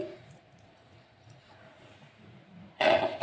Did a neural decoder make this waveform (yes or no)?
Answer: yes